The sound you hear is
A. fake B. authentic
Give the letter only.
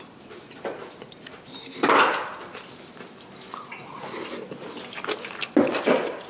B